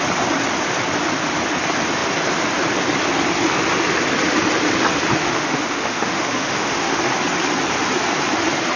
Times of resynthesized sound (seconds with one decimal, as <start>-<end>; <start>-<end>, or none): 5.1-7.0

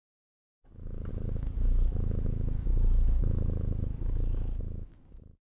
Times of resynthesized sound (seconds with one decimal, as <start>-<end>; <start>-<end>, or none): 1.1-5.4

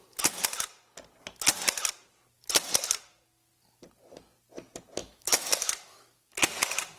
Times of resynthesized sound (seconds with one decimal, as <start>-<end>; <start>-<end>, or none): 5.0-6.3

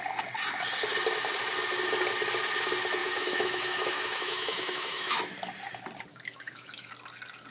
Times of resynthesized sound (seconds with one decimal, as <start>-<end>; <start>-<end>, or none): 3.0-5.3; 6.1-6.9